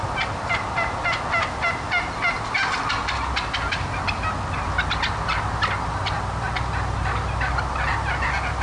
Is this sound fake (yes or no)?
no